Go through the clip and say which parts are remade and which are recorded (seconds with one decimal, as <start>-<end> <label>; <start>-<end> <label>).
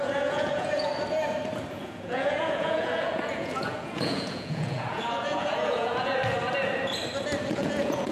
0.0-0.9 remade; 0.9-1.7 recorded; 1.7-6.2 remade; 6.2-7.5 recorded; 7.5-8.1 remade